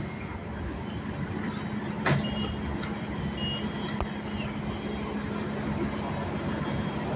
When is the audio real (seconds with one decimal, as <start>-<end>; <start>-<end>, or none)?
0.0-7.2